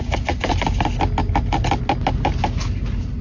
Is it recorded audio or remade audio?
recorded